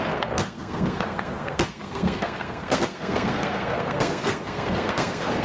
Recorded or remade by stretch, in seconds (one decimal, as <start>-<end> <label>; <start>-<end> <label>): 0.0-5.4 remade